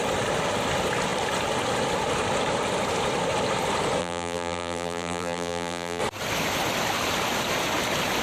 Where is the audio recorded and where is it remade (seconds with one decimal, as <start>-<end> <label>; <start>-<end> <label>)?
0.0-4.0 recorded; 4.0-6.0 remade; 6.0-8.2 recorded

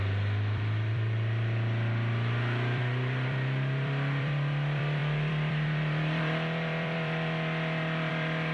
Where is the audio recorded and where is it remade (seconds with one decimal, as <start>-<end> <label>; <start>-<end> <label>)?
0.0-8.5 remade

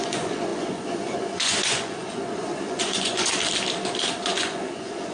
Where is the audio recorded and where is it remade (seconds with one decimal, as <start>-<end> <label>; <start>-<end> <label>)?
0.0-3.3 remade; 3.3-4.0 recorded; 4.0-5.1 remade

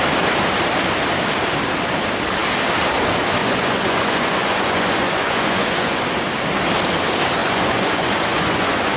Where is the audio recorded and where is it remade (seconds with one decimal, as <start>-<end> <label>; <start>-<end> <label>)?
0.0-3.4 recorded; 3.4-6.0 remade; 6.0-7.4 recorded; 7.4-9.0 remade